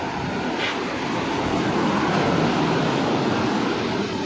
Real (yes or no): yes